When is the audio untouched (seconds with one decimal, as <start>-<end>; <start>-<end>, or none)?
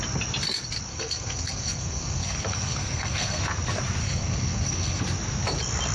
0.0-0.9; 3.4-4.0; 5.0-5.9